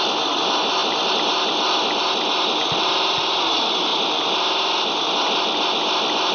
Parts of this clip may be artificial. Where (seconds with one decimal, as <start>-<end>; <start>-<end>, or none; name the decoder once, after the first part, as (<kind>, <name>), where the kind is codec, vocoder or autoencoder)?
none